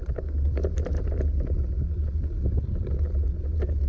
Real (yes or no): yes